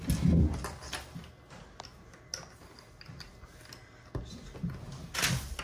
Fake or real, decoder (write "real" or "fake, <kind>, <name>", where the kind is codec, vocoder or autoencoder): real